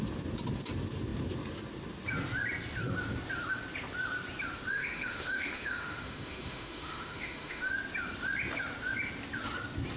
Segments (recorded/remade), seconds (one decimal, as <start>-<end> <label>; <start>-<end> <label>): 0.0-4.7 recorded; 4.7-7.7 remade; 7.7-10.0 recorded

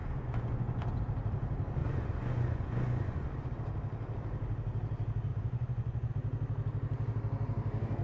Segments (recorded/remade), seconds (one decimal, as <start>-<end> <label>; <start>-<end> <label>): 0.0-1.0 remade; 1.0-1.8 recorded; 1.8-3.3 remade; 3.3-5.3 recorded; 5.3-6.1 remade; 6.1-8.0 recorded